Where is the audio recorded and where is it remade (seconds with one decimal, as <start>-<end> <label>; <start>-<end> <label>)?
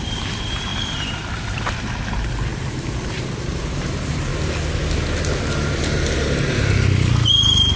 0.0-4.3 remade; 4.3-7.8 recorded